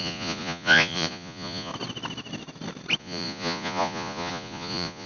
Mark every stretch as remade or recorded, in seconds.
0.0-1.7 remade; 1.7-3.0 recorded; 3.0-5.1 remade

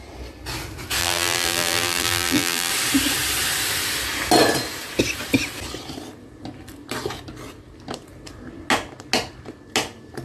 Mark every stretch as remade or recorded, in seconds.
0.0-1.0 recorded; 1.0-2.7 remade; 2.7-10.2 recorded

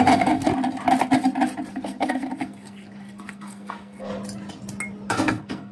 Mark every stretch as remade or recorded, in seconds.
0.0-0.5 remade; 0.5-1.7 recorded; 1.7-4.1 remade; 4.1-5.1 recorded; 5.1-5.7 remade

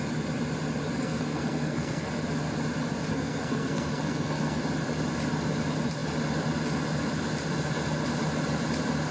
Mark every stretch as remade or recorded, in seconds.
0.0-0.9 recorded; 0.9-2.1 remade; 2.1-3.1 recorded; 3.1-4.6 remade; 4.6-9.1 recorded